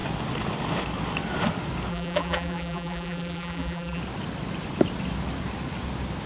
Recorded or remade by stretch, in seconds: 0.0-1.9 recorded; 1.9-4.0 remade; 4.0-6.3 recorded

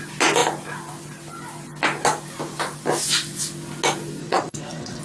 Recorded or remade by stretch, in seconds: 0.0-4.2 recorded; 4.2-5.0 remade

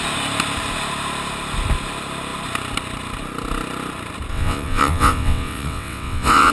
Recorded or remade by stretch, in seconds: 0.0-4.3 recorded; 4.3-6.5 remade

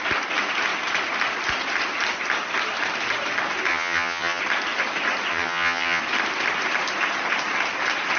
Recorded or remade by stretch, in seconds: 0.0-3.7 recorded; 3.7-4.4 remade; 4.4-5.3 recorded; 5.3-6.0 remade; 6.0-8.2 recorded